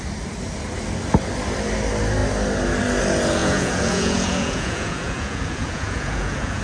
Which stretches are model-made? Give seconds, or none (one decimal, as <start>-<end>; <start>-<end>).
3.4-6.6